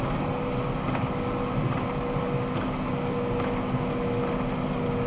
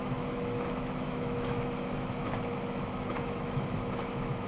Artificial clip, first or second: second